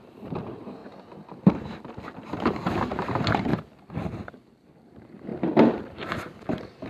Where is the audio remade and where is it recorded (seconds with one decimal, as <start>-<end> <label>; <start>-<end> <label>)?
0.0-0.8 remade; 0.8-1.5 recorded; 1.5-3.5 remade; 3.5-4.3 recorded; 4.3-6.9 remade